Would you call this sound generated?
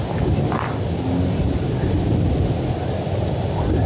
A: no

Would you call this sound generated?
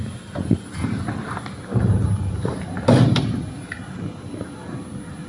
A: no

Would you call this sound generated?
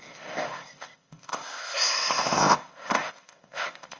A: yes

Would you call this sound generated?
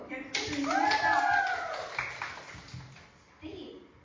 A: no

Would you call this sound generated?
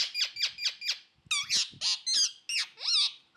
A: no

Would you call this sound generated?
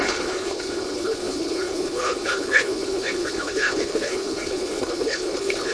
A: yes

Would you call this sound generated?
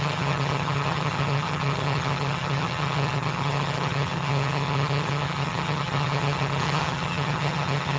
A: yes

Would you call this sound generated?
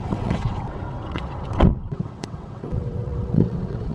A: yes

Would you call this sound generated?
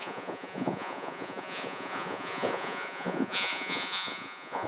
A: yes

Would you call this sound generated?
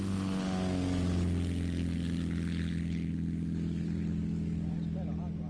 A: no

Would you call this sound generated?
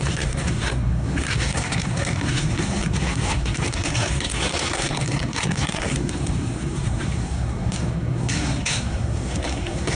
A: yes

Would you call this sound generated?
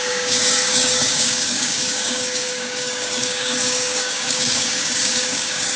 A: yes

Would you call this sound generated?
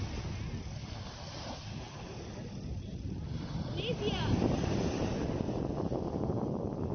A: no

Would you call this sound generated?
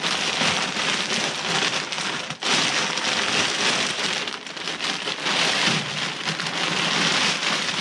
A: no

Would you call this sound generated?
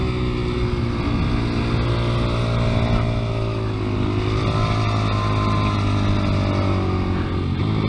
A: no